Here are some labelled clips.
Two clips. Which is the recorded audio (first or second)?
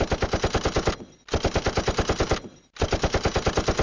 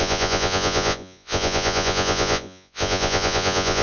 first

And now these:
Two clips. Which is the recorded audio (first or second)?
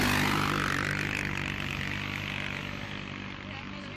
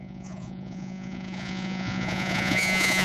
first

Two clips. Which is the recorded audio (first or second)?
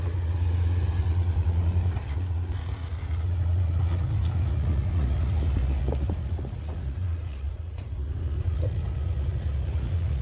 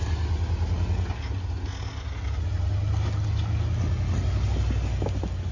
second